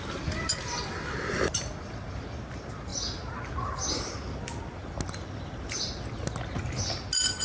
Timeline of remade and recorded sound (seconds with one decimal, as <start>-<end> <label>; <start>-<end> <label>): 0.0-7.4 recorded